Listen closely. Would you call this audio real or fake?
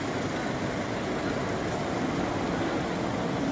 real